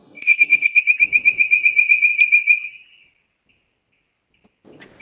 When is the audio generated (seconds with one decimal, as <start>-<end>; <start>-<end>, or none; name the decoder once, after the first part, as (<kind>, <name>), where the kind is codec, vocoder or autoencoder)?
0.0-0.8 (codec, SNAC)